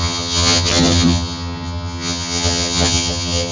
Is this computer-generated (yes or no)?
yes